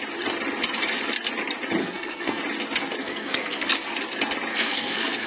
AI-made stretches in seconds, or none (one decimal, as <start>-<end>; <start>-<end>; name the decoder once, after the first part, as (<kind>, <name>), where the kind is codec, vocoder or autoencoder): 1.8-2.4 (codec, SNAC); 3.0-3.9; 4.5-5.3